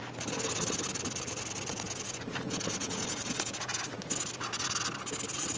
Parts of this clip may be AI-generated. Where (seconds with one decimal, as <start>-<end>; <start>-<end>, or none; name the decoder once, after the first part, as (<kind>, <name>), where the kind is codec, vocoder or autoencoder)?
1.7-3.9 (vocoder, Vocos)